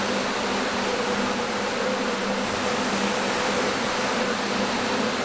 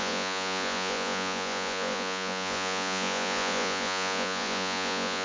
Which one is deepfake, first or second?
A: second